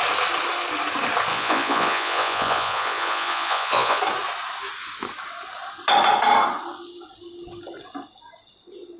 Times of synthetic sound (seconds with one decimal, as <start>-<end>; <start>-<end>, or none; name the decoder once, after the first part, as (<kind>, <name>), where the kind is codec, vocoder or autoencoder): 1.3-4.0 (vocoder, Vocos)